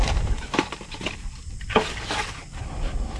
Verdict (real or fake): real